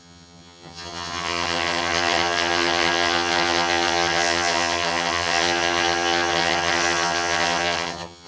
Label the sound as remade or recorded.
remade